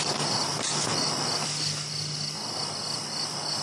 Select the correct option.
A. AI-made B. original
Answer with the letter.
B